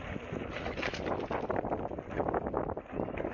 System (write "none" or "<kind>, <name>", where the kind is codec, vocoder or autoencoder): none